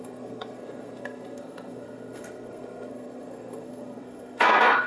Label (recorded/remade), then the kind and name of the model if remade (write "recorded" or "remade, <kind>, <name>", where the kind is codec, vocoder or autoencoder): remade, codec, SNAC